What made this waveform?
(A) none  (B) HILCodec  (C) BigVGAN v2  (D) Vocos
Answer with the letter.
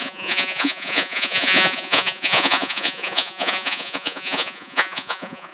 D